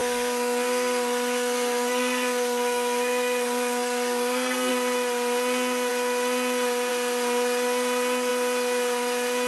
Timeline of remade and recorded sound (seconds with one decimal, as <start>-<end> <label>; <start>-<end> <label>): 0.0-4.7 remade; 4.7-9.5 recorded